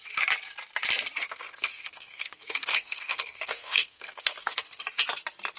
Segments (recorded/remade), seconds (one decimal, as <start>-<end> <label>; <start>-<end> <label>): 0.0-1.2 recorded; 1.2-4.6 remade; 4.6-5.6 recorded